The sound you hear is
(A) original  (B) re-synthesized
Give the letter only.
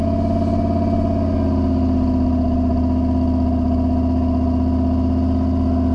A